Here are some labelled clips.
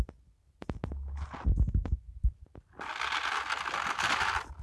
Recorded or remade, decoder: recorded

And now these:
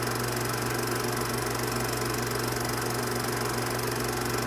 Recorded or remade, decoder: recorded